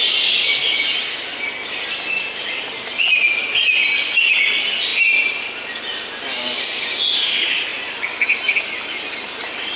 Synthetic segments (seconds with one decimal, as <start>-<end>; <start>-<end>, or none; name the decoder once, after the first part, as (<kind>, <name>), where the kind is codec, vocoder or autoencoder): none